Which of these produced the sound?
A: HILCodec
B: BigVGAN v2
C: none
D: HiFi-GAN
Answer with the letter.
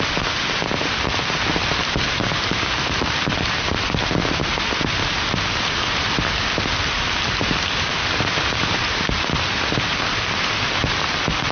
C